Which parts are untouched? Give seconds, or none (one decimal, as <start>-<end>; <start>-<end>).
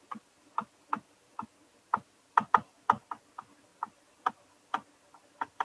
0.0-5.6